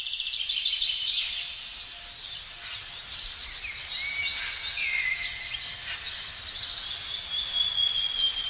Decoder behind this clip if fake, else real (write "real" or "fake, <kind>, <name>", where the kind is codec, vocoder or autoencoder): real